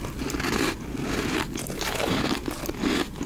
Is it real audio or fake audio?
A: real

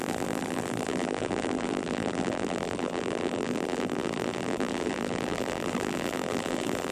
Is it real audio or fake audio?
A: fake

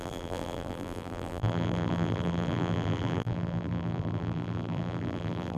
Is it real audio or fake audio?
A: fake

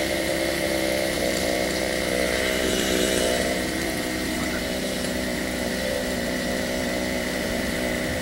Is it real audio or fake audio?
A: fake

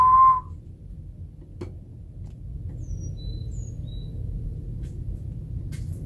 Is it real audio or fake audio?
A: real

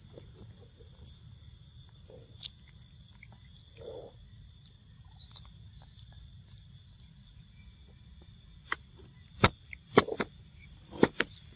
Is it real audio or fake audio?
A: real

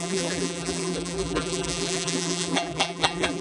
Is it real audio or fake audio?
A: fake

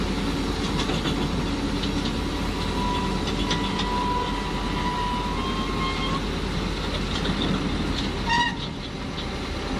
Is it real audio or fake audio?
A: real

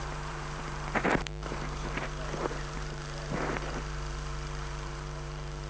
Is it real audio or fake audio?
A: fake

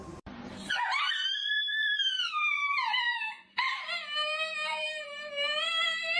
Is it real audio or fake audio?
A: fake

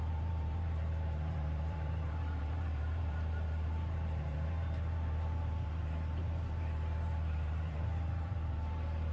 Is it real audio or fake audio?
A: fake